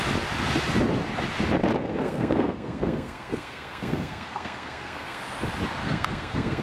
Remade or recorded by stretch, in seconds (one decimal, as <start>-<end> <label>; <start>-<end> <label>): 0.0-1.8 recorded; 1.8-5.2 remade; 5.2-5.8 recorded; 5.8-6.6 remade